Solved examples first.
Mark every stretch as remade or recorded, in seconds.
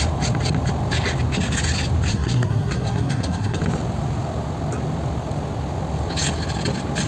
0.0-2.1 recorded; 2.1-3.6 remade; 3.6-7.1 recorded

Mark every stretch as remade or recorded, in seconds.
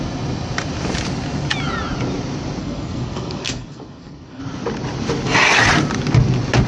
0.0-2.6 recorded; 2.6-4.4 remade; 4.4-6.7 recorded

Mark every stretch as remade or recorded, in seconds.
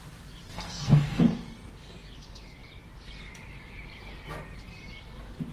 0.0-0.5 recorded; 0.5-1.2 remade; 1.2-5.5 recorded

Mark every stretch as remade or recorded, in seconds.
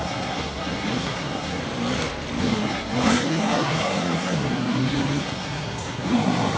0.0-1.6 remade; 1.6-2.4 recorded; 2.4-6.6 remade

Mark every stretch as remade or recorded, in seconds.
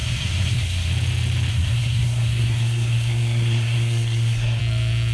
0.0-0.9 remade; 0.9-1.5 recorded; 1.5-4.6 remade; 4.6-5.1 recorded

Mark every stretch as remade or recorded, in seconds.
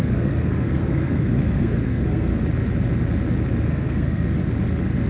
0.0-2.3 remade; 2.3-3.7 recorded; 3.7-4.4 remade; 4.4-5.1 recorded